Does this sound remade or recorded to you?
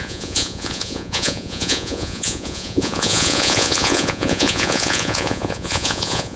remade